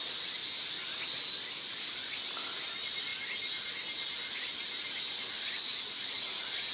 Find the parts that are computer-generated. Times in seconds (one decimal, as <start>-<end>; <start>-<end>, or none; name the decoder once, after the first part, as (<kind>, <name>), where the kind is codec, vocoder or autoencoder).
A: none